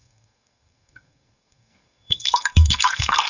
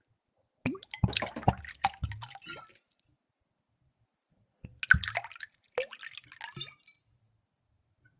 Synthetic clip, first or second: first